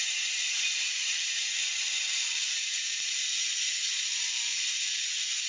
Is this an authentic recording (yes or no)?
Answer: no